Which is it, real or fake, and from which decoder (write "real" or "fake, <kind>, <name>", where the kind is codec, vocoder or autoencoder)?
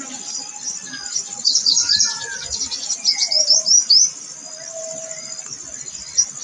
real